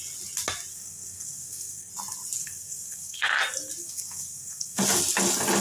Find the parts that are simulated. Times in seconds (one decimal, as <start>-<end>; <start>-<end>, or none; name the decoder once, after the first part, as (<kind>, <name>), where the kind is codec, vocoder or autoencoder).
0.7-1.9 (codec, SNAC); 2.4-3.4; 3.8-4.8